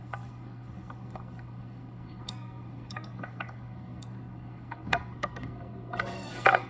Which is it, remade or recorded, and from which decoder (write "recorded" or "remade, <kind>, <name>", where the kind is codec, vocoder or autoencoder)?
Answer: remade, codec, SNAC